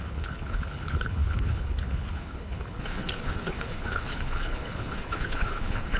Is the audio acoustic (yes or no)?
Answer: no